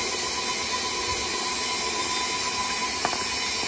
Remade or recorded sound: recorded